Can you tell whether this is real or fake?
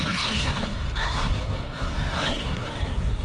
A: fake